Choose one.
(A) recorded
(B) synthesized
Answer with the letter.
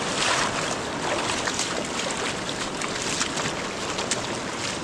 A